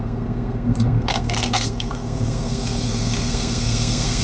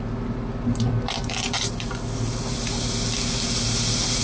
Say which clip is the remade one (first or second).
first